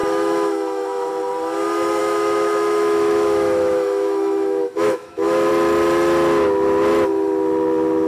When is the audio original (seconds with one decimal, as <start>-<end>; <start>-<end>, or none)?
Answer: 1.1-2.0; 5.5-8.1